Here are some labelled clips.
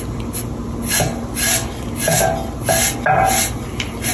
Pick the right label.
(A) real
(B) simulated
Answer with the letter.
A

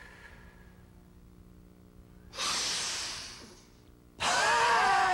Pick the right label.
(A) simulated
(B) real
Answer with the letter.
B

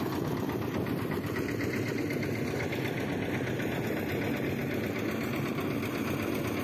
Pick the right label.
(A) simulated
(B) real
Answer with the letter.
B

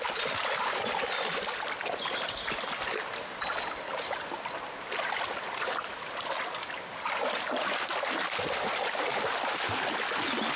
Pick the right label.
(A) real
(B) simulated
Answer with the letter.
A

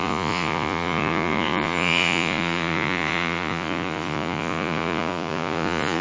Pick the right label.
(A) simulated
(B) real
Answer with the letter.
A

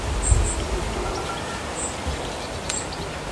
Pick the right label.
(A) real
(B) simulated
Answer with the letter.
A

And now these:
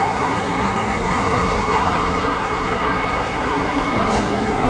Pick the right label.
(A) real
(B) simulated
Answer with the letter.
B